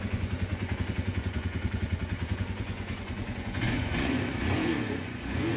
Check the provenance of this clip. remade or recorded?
remade